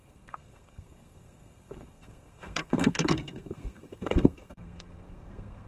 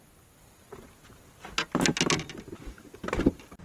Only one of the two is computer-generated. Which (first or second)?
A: first